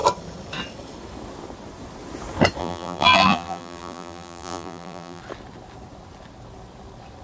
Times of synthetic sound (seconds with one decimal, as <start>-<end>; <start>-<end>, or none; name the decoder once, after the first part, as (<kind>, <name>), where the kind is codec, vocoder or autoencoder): 2.6-5.2 (vocoder, BigVGAN v2)